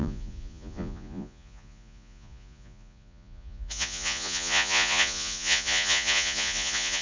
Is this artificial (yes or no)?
yes